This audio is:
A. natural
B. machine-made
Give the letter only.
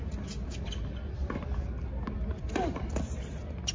A